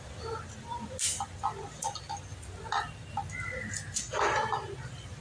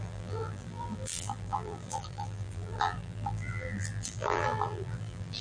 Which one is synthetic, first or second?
second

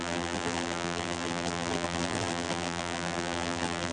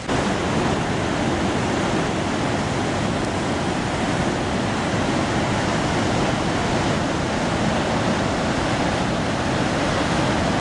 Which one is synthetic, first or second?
first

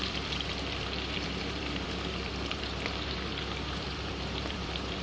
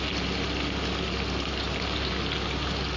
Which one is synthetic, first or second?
first